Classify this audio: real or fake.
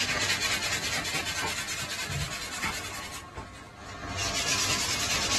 real